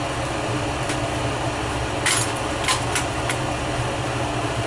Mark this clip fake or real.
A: real